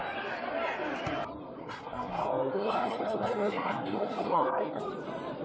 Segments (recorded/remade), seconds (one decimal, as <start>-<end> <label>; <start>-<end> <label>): 0.0-1.6 recorded; 1.6-4.8 remade; 4.8-5.4 recorded